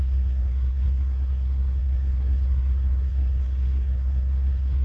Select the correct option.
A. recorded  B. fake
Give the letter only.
B